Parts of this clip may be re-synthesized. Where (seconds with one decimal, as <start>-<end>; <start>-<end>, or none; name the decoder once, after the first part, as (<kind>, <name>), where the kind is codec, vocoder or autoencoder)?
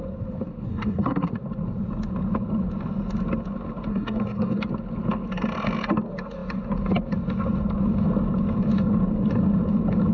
0.7-1.3 (codec, SNAC); 3.9-4.6